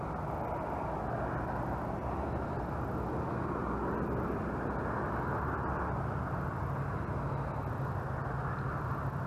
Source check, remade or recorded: recorded